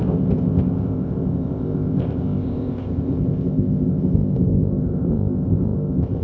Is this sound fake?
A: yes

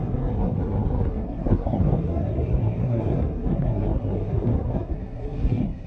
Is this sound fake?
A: yes